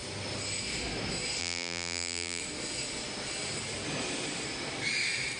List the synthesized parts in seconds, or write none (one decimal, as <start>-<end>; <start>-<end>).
1.4-2.4